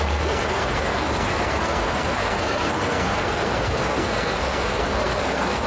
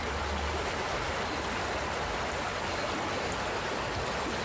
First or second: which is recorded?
second